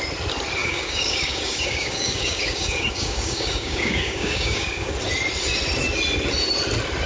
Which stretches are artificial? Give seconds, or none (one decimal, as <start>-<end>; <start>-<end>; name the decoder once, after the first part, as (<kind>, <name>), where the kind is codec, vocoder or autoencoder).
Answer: 0.6-4.9 (codec, DAC)